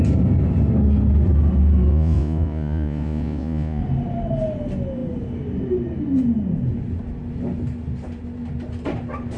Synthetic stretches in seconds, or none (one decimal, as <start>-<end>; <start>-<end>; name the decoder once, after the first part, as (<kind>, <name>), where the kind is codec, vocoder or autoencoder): 1.9-3.8 (vocoder, Vocos)